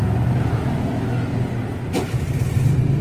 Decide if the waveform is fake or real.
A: real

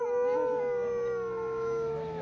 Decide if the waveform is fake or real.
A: real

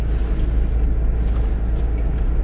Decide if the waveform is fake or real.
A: real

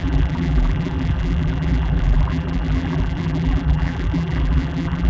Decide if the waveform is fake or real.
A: fake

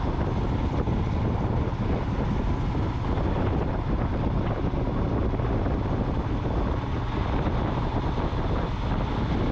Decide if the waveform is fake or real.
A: real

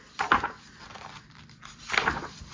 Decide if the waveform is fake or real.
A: fake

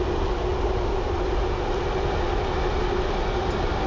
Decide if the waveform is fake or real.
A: real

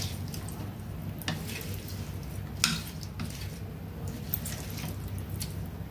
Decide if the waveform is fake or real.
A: real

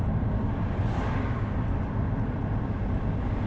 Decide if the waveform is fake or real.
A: real